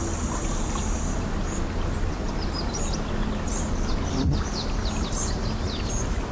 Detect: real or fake real